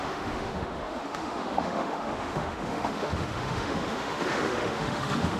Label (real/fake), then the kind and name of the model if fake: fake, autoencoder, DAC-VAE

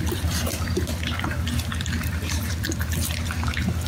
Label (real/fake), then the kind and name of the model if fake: fake, vocoder, BigVGAN v2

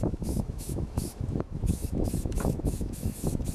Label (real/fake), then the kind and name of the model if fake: fake, autoencoder, DAC-VAE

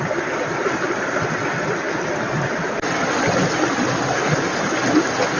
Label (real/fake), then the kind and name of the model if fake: real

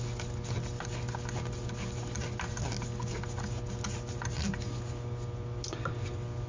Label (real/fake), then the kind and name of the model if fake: real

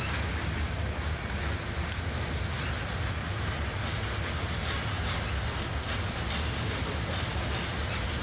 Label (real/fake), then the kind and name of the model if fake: real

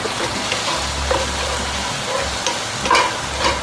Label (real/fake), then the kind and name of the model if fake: real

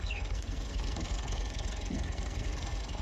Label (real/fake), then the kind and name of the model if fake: fake, codec, SNAC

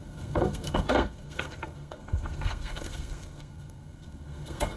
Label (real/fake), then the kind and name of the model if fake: fake, codec, SNAC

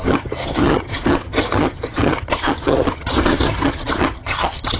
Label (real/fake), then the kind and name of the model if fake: fake, vocoder, HiFi-GAN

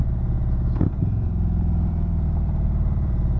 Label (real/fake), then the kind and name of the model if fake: fake, vocoder, Vocos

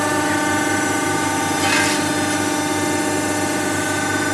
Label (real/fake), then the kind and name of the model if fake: real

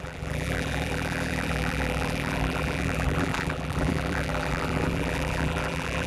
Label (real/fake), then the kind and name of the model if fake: fake, vocoder, BigVGAN v2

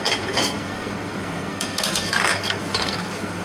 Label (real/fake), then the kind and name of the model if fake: fake, codec, SNAC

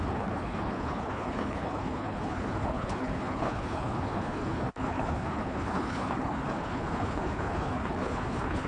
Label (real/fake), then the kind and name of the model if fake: fake, codec, HILCodec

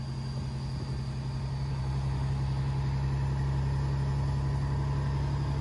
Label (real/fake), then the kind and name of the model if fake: real